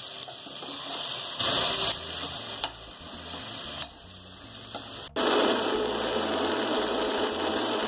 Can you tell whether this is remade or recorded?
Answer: recorded